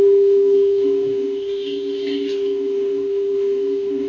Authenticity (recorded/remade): remade